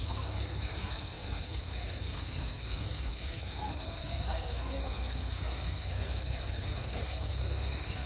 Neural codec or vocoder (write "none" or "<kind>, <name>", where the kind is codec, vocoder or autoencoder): codec, SNAC